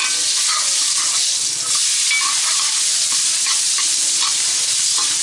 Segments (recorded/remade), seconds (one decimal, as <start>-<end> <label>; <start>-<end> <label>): 0.0-5.2 recorded